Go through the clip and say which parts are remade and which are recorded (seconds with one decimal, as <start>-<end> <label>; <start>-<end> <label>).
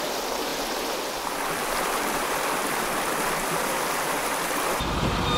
0.0-2.6 recorded; 2.6-3.6 remade; 3.6-5.4 recorded